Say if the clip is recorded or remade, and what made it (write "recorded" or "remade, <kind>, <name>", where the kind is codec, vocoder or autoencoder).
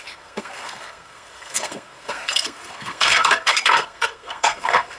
remade, codec, SNAC